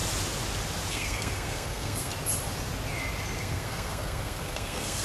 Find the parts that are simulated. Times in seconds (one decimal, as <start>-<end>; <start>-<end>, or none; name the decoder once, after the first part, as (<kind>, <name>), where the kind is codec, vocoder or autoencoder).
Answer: 0.9-2.1 (codec, SNAC); 3.4-5.0